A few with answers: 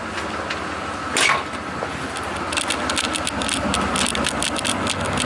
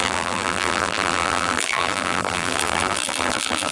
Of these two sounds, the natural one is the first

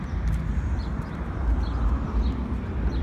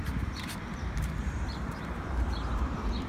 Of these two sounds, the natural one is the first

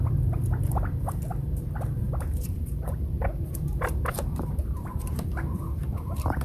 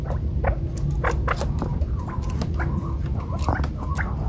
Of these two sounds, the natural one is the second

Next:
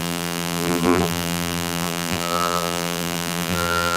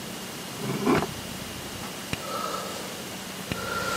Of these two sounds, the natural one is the second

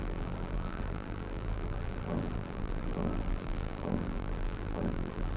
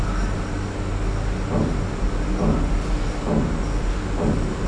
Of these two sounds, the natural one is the second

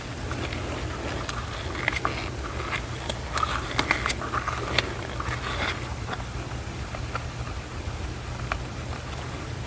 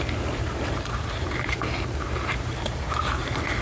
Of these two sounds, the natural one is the first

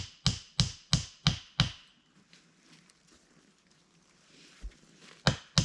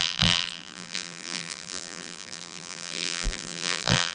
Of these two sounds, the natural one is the first